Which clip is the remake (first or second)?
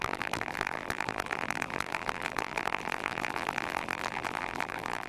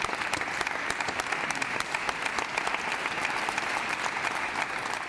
first